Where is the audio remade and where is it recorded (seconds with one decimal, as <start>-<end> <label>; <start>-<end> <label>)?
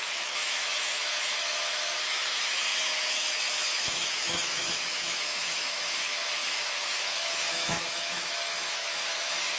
0.0-9.6 remade